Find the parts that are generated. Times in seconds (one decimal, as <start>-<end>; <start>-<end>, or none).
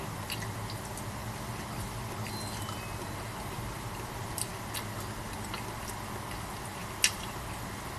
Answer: none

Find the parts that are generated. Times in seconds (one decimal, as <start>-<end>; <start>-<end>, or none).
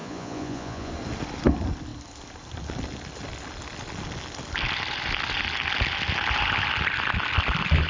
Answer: 0.0-0.9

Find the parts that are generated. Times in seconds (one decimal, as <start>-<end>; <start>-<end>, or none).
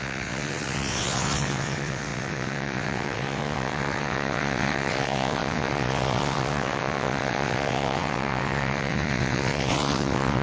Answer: 0.0-10.4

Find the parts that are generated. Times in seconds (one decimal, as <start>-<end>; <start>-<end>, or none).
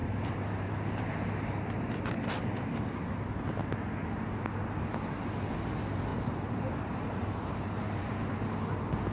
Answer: 0.0-0.7; 6.1-8.0